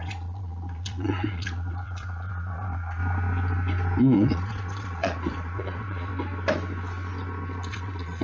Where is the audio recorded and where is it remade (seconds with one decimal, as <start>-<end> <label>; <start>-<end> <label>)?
0.0-3.0 remade; 3.0-4.0 recorded; 4.0-6.1 remade; 6.1-7.7 recorded; 7.7-8.2 remade